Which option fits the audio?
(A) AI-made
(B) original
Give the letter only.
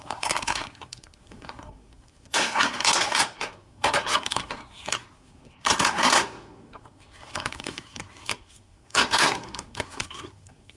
A